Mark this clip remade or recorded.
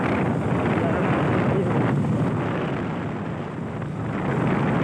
recorded